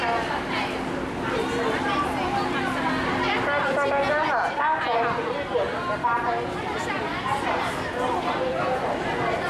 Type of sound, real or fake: real